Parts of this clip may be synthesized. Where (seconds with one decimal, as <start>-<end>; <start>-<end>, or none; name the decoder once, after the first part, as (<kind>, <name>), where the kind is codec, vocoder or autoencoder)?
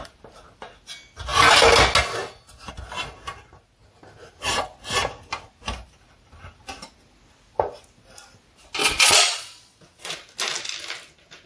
8.8-10.1 (vocoder, Vocos)